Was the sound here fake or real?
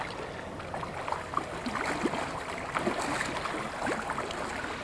real